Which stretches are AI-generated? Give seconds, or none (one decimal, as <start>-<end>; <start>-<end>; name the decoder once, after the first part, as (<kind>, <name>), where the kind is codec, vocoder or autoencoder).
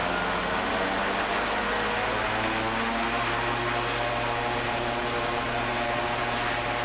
4.1-6.8 (vocoder, BigVGAN v2)